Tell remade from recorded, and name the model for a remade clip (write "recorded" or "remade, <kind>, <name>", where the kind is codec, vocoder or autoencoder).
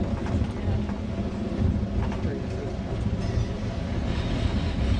recorded